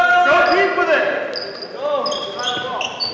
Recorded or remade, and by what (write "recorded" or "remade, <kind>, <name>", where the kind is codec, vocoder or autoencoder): recorded